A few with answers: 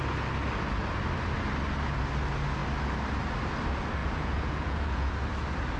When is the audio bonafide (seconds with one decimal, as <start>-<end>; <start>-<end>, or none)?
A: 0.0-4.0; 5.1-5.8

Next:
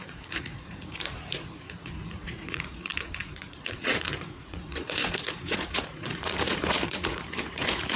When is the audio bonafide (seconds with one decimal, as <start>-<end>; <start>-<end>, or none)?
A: none

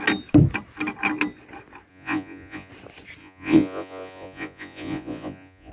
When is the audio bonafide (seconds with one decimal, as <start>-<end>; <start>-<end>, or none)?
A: 0.0-1.9; 2.7-3.2

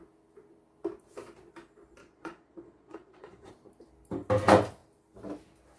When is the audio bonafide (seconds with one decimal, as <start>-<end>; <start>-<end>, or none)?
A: 0.0-2.0; 3.5-5.8

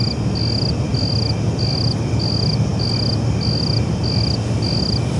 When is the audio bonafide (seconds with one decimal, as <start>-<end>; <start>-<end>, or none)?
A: 0.0-5.2

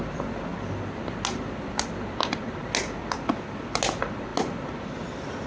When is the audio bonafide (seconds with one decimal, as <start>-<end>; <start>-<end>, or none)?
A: 0.0-5.5